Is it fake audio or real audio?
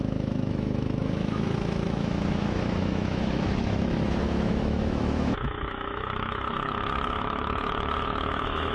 fake